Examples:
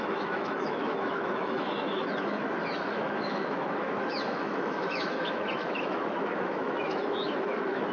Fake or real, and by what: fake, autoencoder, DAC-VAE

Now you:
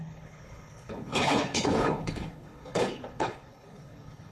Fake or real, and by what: fake, codec, HILCodec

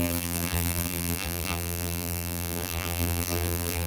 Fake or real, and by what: fake, vocoder, BigVGAN v2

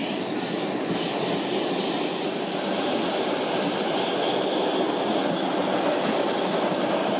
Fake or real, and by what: real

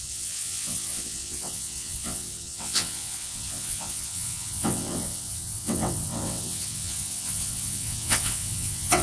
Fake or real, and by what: fake, vocoder, WaveNeXt